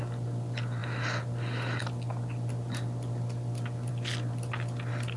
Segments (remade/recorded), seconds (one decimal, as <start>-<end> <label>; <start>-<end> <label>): 0.0-5.2 recorded